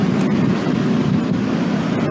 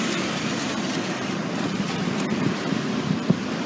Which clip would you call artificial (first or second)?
second